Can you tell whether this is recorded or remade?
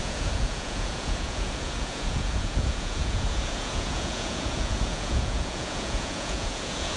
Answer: remade